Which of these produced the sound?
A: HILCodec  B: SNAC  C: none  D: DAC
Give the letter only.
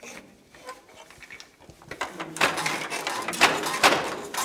C